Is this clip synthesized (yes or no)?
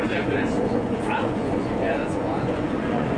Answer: yes